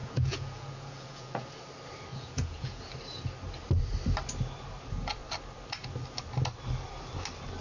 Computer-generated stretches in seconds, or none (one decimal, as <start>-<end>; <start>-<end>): 0.0-1.6; 2.1-2.8